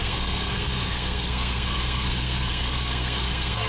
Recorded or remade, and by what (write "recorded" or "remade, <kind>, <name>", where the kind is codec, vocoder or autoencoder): remade, codec, SNAC